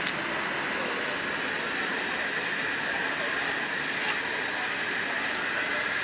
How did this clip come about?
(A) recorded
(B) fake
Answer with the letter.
A